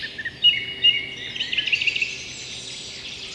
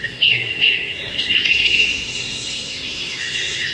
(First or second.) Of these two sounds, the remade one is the second